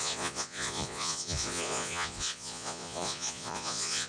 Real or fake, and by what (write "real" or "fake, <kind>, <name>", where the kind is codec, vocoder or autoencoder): fake, vocoder, Vocos